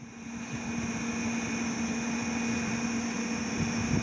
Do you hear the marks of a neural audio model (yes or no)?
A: no